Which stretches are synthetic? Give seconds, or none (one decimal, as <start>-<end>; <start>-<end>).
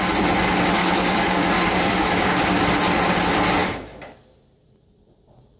0.8-2.6